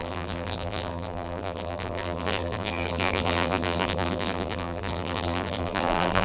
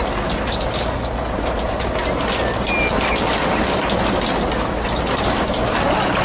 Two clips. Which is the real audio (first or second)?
second